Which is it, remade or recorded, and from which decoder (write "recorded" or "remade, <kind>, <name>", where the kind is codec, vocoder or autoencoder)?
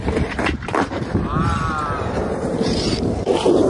remade, vocoder, BigVGAN v2